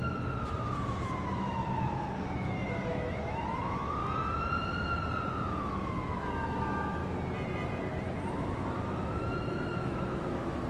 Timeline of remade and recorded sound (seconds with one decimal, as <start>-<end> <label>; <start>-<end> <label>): 0.0-4.0 remade; 4.0-5.6 recorded; 5.6-7.0 remade; 7.0-8.3 recorded; 8.3-10.7 remade